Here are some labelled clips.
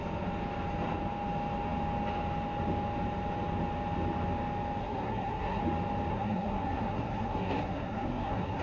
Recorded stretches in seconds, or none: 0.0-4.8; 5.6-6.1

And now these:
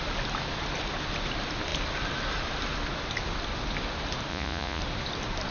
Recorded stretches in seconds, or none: 0.0-4.3; 4.8-5.5

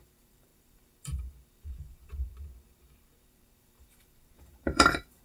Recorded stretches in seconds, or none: none

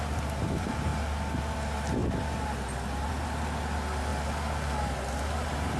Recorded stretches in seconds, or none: 0.0-5.8

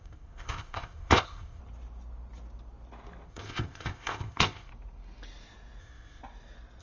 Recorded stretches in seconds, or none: 1.6-3.3; 4.7-5.8; 6.2-6.8